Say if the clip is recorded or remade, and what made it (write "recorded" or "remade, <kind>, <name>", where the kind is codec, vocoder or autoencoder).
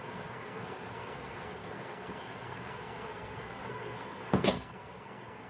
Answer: remade, codec, SNAC